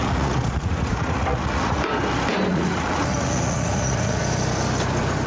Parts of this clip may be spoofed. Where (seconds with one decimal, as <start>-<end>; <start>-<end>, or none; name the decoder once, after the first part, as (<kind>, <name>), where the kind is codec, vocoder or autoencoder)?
0.0-1.8 (vocoder, Vocos); 2.5-4.2